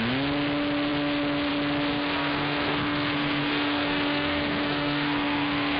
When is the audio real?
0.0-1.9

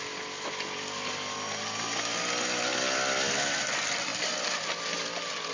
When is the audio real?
0.0-5.5

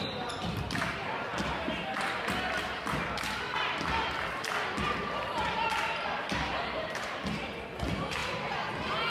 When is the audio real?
0.0-9.1